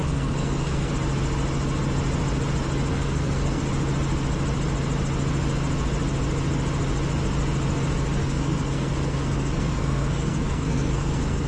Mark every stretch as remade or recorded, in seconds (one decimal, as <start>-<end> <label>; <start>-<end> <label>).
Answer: 0.0-0.9 remade; 0.9-2.9 recorded; 2.9-3.6 remade; 3.6-8.2 recorded; 8.2-11.5 remade